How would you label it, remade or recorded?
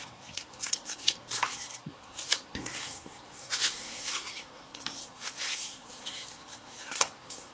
remade